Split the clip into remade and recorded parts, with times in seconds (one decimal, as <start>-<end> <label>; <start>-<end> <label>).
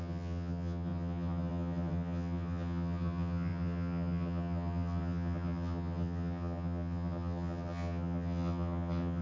0.0-9.2 remade